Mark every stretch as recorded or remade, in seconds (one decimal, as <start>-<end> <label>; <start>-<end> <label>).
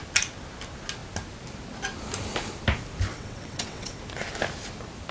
0.0-3.1 recorded; 3.1-4.0 remade; 4.0-5.1 recorded